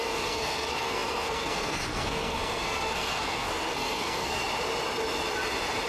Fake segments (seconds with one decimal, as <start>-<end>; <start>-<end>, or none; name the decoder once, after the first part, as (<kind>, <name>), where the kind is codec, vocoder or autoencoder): 0.0-4.4 (codec, SNAC)